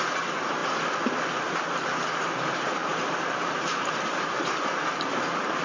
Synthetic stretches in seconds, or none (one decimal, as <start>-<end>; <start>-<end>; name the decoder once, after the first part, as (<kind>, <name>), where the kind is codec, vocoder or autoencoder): 2.8-4.6 (vocoder, BigVGAN v2)